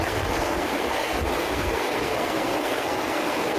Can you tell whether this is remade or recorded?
remade